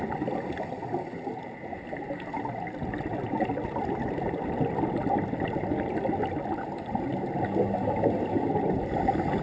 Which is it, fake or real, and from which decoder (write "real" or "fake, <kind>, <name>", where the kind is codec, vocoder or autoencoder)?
real